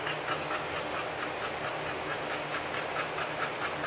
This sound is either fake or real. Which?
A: real